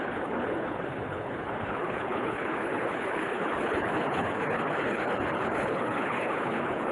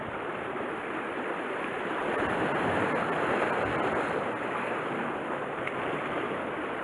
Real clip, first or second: second